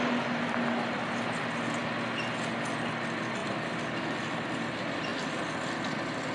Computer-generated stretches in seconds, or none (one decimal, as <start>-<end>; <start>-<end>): 3.4-4.5